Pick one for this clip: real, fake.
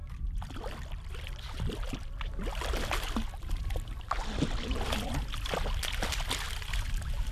real